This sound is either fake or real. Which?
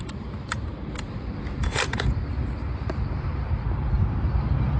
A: fake